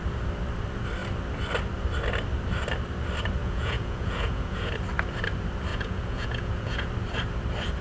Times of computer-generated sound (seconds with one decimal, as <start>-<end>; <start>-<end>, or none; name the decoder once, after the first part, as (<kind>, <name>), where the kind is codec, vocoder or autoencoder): 3.4-4.7 (vocoder, Vocos); 5.7-6.9